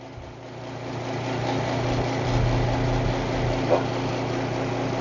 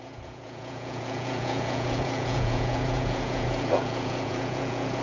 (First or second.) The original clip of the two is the first